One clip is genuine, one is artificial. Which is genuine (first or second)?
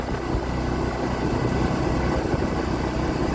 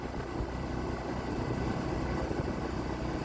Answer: first